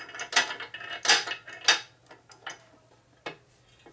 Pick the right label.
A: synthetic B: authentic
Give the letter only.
B